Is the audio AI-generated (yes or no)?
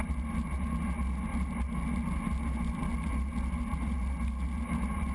no